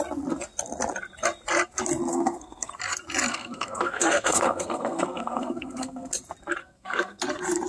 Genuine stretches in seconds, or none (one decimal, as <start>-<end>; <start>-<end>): 0.0-2.1; 2.7-3.3; 6.1-6.6; 7.2-7.7

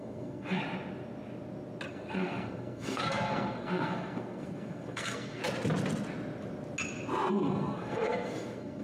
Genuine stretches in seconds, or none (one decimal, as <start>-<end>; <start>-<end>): 0.6-1.9; 5.4-7.3

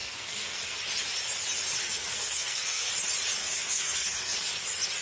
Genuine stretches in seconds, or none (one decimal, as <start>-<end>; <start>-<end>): 0.8-1.8; 2.9-3.4; 4.5-5.0

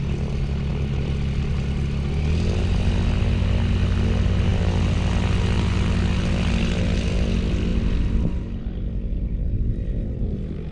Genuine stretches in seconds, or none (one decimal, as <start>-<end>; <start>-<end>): 0.0-10.7

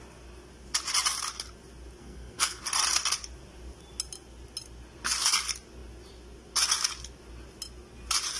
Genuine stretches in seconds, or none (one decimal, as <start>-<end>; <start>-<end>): 0.0-2.0; 2.6-8.4